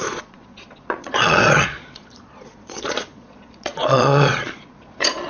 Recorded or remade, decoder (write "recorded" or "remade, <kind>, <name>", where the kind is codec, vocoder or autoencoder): remade, vocoder, Vocos